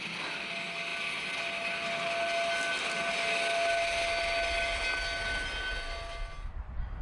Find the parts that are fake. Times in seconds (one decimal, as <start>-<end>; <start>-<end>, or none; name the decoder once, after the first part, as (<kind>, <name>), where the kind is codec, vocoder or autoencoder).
none